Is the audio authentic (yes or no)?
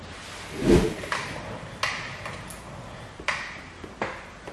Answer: yes